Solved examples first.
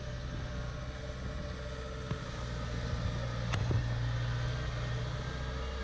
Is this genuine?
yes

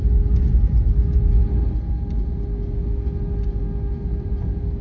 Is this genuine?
yes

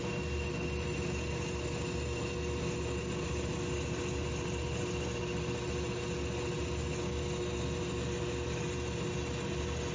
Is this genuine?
yes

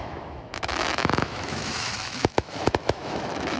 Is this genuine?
no